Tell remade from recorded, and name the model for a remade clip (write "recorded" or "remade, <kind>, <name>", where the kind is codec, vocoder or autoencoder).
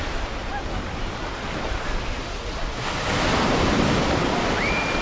recorded